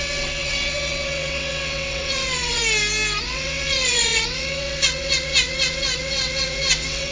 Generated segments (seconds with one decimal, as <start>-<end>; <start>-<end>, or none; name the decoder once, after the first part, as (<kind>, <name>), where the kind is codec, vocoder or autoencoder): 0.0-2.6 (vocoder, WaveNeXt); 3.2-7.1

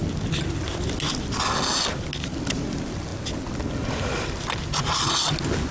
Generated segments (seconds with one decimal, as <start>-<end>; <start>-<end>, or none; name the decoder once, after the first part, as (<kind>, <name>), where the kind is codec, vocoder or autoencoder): none

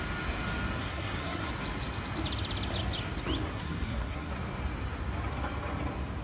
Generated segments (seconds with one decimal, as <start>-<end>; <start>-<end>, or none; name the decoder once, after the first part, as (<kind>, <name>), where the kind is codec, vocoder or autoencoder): 0.8-1.5 (codec, SNAC); 3.5-4.3

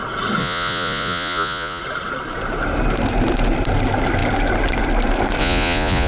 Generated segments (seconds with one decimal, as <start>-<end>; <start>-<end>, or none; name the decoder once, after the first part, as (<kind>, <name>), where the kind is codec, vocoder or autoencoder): 0.4-1.8 (vocoder, Vocos); 5.4-6.1

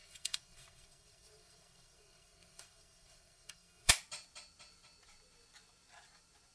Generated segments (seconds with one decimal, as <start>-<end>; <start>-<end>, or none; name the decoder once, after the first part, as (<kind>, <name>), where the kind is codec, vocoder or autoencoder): 0.0-3.9 (codec, SNAC)